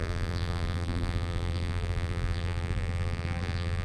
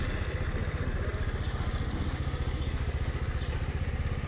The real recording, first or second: second